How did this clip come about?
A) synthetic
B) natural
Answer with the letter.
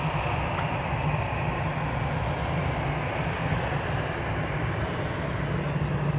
B